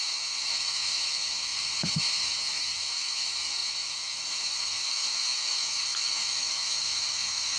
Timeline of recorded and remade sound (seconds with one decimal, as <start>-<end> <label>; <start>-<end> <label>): 0.0-7.6 remade